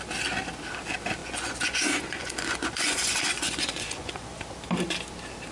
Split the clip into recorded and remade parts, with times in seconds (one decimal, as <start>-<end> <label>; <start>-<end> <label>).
0.0-1.2 recorded; 1.2-4.4 remade; 4.4-5.5 recorded

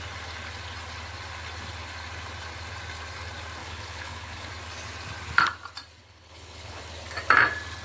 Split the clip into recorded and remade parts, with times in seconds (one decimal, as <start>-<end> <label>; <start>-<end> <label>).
0.0-3.6 recorded; 3.6-4.5 remade; 4.5-6.0 recorded; 6.0-6.8 remade; 6.8-7.8 recorded